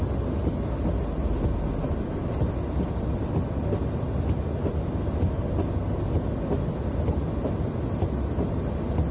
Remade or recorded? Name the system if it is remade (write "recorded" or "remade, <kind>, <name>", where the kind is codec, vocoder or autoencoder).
recorded